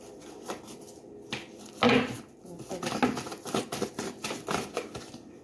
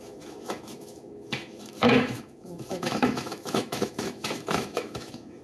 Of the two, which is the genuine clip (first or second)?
first